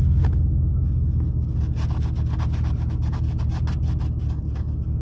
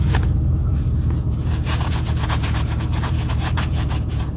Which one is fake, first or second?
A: second